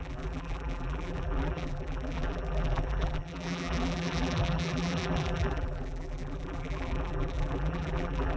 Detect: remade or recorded remade